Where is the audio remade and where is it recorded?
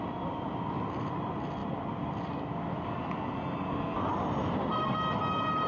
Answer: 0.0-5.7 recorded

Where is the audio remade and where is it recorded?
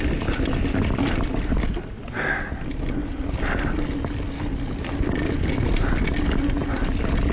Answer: 0.0-7.3 recorded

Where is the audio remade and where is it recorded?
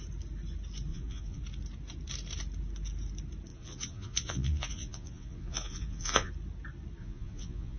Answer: 0.0-0.9 recorded; 0.9-1.4 remade; 1.4-3.5 recorded; 3.5-6.3 remade; 6.3-7.0 recorded; 7.0-7.8 remade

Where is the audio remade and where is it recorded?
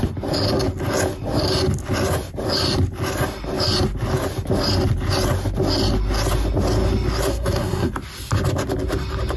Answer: 0.0-7.3 recorded; 7.3-7.9 remade; 7.9-9.4 recorded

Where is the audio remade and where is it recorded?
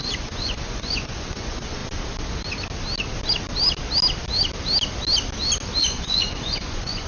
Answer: 0.0-1.8 remade; 1.8-5.8 recorded; 5.8-7.1 remade